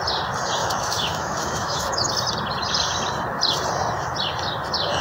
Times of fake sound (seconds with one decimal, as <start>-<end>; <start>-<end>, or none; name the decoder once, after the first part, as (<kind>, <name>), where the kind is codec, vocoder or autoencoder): 0.6-2.1 (autoencoder, DAC-VAE)